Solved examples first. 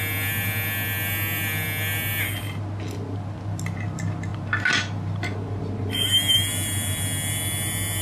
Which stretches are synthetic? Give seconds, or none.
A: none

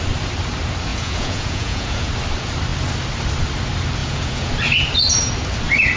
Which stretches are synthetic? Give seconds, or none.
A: 0.9-2.1; 4.0-4.5

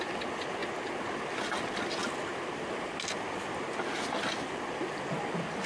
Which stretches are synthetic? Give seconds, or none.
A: none

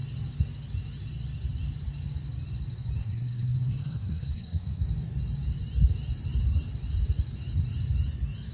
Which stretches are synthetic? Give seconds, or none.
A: 3.0-4.8

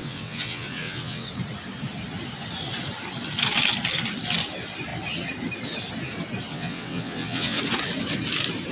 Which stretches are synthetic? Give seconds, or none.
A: 0.0-1.3; 6.5-7.6